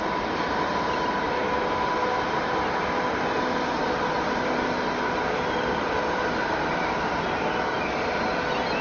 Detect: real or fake real